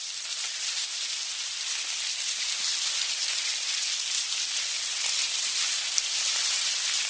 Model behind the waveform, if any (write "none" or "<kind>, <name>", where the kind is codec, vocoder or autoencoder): none